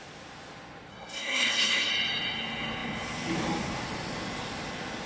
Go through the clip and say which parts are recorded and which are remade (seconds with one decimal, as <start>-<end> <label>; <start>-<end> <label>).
0.0-0.9 recorded; 0.9-1.9 remade; 1.9-5.1 recorded

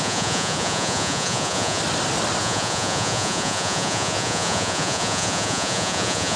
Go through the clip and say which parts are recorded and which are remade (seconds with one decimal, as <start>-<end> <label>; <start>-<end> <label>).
0.0-1.8 remade; 1.8-2.4 recorded; 2.4-6.4 remade

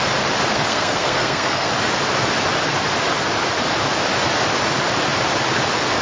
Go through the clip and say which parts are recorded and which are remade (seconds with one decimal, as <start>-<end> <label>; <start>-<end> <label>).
0.0-0.5 recorded; 0.5-1.7 remade; 1.7-6.0 recorded

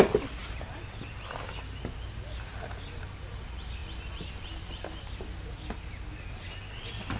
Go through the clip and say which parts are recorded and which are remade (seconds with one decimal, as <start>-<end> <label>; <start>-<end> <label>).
0.0-7.2 recorded

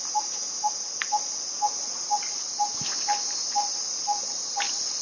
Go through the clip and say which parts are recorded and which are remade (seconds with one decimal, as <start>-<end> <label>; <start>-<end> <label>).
0.0-5.0 recorded

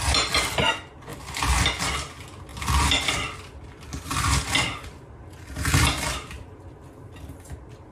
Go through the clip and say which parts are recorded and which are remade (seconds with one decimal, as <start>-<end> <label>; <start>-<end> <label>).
0.0-7.9 recorded

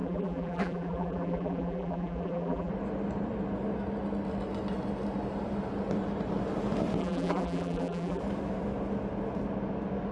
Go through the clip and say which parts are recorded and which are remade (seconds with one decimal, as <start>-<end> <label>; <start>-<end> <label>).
0.0-2.7 remade; 2.7-7.0 recorded; 7.0-8.2 remade; 8.2-10.1 recorded